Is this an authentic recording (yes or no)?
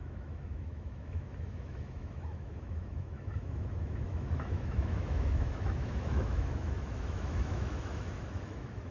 no